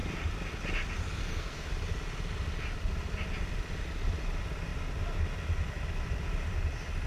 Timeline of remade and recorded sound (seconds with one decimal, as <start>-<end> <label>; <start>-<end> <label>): 0.0-1.2 recorded; 1.2-1.7 remade; 1.7-7.1 recorded